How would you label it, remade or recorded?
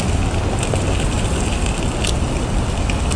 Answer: recorded